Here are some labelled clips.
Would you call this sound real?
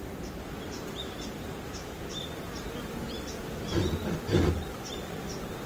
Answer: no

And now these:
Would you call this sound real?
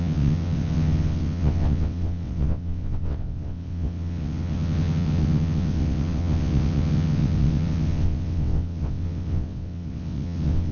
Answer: no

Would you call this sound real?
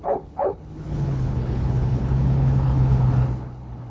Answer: no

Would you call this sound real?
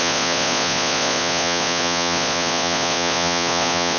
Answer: no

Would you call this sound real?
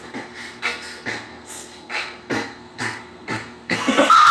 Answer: no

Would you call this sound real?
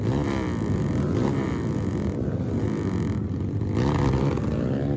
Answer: yes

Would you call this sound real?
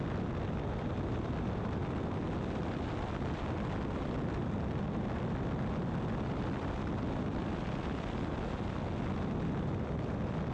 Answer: yes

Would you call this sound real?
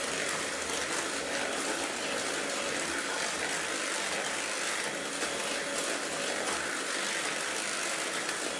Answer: yes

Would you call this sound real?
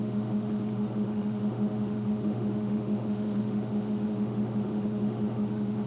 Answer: no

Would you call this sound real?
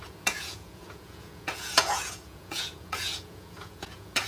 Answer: no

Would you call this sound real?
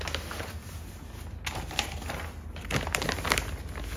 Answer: yes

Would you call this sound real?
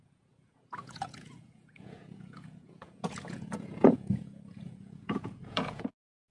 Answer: no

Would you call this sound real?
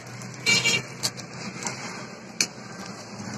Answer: yes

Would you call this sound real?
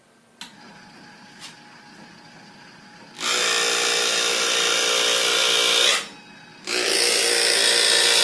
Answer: yes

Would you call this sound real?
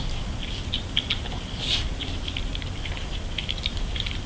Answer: yes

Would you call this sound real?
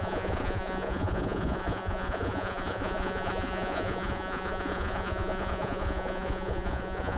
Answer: no